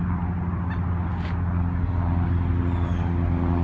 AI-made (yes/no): no